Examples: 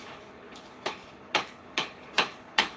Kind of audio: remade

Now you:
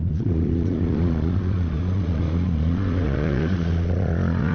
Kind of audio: remade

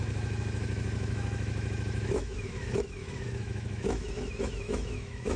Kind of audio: remade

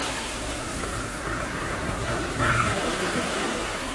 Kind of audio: remade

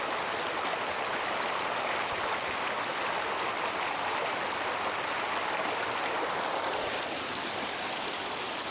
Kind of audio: recorded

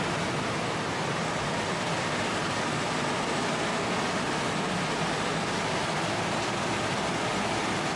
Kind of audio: recorded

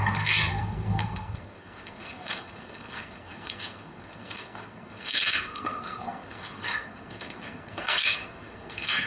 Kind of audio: remade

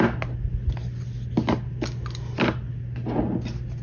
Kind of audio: recorded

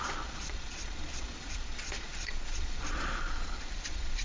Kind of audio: remade